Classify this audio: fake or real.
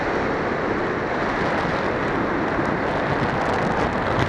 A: real